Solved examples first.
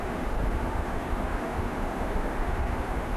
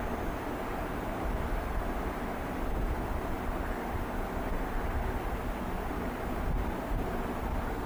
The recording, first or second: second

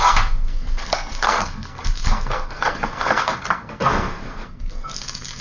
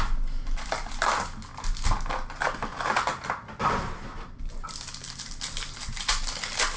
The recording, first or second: second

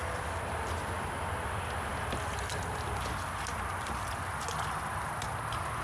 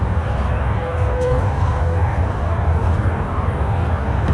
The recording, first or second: first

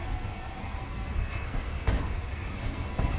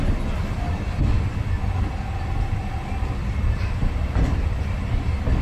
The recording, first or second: second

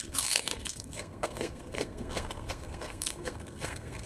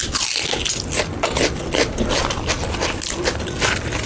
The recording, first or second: second